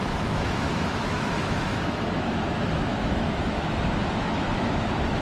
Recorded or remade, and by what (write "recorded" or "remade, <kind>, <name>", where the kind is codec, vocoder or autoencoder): remade, autoencoder, DAC-VAE